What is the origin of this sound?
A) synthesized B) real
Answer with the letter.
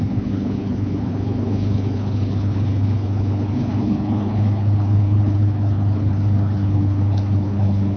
A